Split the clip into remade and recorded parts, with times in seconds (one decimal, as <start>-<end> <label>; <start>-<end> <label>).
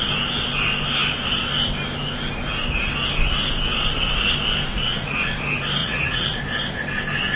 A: 0.0-4.7 recorded; 4.7-5.3 remade; 5.3-5.8 recorded; 5.8-6.4 remade; 6.4-7.4 recorded